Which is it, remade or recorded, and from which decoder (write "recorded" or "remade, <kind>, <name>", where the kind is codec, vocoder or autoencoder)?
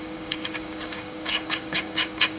remade, codec, DAC